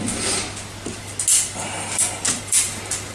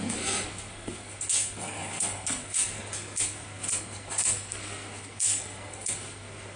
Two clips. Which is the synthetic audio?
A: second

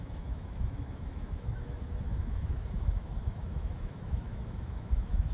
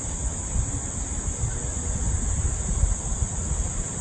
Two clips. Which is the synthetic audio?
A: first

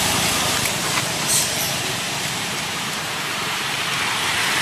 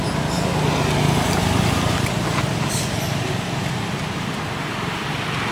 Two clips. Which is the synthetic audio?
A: first